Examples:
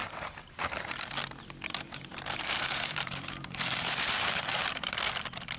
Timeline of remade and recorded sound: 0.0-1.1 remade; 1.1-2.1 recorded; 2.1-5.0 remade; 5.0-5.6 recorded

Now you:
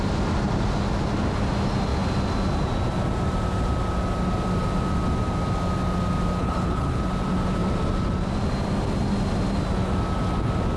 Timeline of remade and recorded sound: 0.0-6.4 recorded; 6.4-7.0 remade; 7.0-10.8 recorded

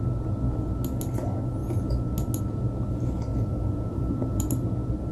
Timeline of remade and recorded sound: 0.0-3.3 recorded; 3.3-4.5 remade; 4.5-5.1 recorded

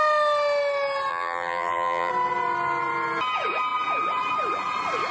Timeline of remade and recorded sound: 0.0-1.1 recorded; 1.1-2.1 remade; 2.1-5.1 recorded

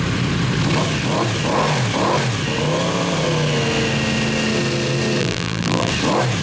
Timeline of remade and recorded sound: 0.0-5.2 recorded; 5.2-5.9 remade; 5.9-6.4 recorded

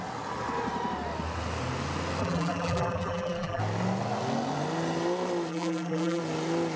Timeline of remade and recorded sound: 0.0-2.2 recorded; 2.2-3.6 remade; 3.6-5.5 recorded; 5.5-6.2 remade; 6.2-6.8 recorded